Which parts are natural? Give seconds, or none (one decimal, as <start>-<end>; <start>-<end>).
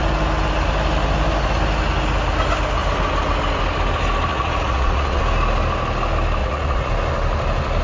0.0-4.3; 5.2-6.4; 6.9-7.8